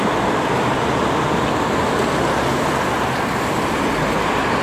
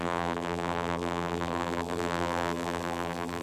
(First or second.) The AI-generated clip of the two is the second